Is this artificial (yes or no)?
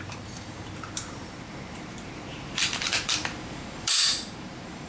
yes